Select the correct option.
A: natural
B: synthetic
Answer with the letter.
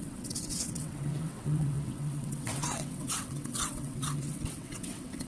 B